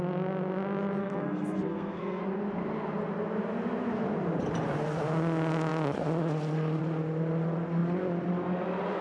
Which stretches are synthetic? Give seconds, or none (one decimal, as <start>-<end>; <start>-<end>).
1.0-2.2